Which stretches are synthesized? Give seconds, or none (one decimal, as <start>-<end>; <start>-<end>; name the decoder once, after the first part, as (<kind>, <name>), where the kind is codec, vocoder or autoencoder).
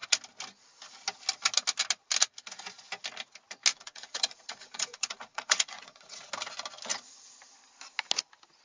3.7-6.3 (vocoder, Vocos)